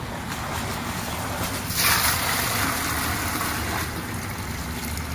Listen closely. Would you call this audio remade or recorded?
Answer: recorded